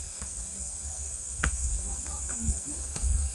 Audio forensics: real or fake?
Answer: fake